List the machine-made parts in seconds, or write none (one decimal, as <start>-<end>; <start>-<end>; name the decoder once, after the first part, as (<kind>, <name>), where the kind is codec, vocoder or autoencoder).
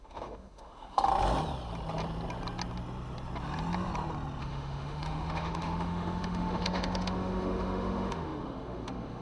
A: 0.0-1.1 (autoencoder, DAC-VAE); 4.4-9.2